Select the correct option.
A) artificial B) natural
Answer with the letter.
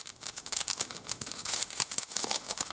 A